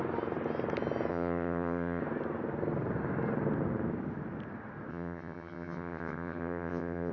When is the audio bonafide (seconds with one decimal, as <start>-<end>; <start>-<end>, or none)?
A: 0.0-1.1; 2.0-4.9